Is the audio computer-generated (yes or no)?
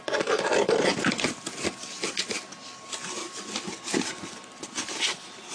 no